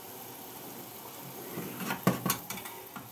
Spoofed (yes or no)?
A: no